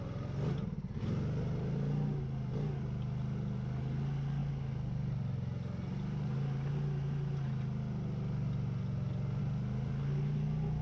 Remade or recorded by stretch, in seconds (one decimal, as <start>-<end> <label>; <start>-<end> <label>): 0.0-10.8 recorded